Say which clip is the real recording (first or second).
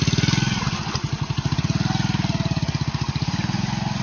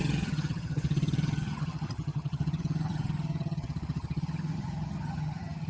first